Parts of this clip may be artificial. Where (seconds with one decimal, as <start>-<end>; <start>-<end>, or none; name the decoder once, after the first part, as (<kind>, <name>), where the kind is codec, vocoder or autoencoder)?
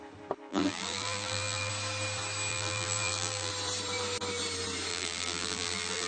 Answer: 0.5-1.7 (vocoder, BigVGAN v2); 2.5-3.5; 4.9-6.1